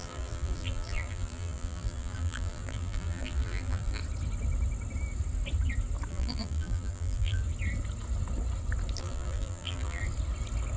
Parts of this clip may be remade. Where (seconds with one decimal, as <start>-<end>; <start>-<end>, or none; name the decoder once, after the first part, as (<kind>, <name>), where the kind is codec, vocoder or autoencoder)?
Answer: 0.0-4.0 (vocoder, BigVGAN v2); 6.1-7.4; 9.0-10.0